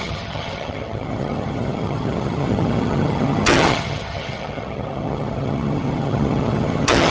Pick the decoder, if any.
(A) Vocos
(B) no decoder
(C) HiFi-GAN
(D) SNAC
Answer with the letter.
C